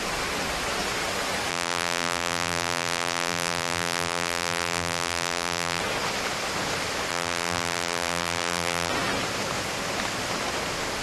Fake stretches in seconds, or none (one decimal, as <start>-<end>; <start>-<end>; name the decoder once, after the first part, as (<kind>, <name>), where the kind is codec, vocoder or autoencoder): 1.5-5.8 (vocoder, BigVGAN v2); 7.1-8.9